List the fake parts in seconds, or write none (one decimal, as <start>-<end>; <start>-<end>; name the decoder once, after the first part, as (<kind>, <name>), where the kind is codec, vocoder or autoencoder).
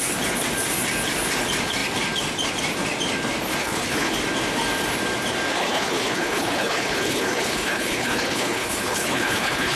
3.6-4.1 (codec, HILCodec); 5.6-9.8